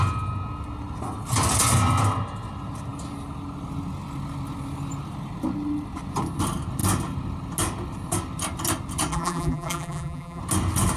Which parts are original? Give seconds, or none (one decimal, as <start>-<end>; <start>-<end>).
0.0-9.1; 10.4-11.0